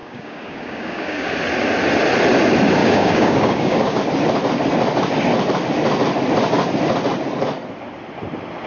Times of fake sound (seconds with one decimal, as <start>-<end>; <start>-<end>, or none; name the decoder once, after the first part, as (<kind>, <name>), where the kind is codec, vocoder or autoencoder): 0.0-1.3 (codec, DAC); 2.8-4.0